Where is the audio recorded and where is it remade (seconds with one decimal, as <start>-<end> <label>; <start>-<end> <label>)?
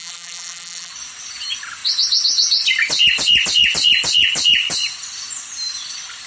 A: 0.0-0.9 remade; 0.9-6.3 recorded